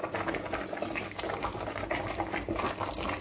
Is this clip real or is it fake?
real